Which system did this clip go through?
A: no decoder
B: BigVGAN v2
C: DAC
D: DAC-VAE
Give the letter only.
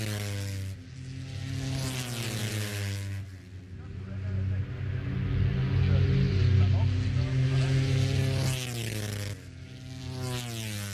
A